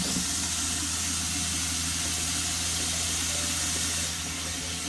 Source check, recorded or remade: recorded